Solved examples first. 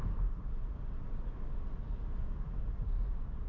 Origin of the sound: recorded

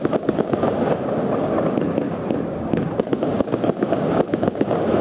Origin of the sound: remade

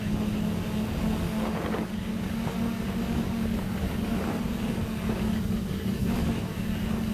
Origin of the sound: remade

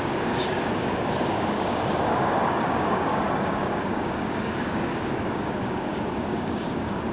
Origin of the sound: remade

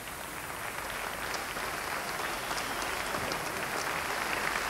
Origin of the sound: recorded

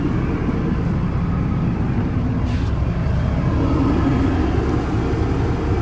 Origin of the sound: recorded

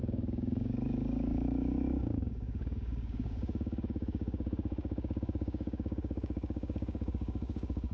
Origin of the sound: remade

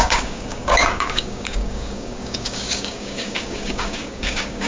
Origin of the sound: remade